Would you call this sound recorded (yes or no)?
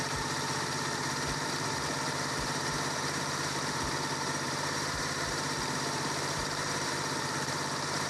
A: no